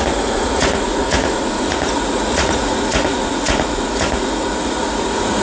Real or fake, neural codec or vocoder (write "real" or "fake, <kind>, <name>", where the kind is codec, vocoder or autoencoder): fake, vocoder, Vocos